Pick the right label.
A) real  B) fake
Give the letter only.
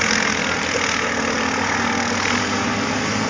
A